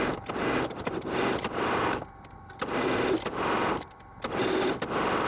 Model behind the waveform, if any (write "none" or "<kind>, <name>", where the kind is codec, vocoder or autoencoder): none